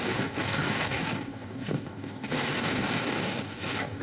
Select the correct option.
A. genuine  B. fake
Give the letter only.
B